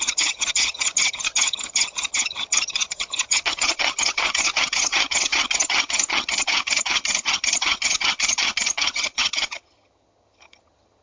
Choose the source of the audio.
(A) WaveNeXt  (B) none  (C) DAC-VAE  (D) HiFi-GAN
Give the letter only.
D